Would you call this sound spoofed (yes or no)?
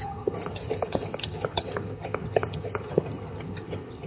yes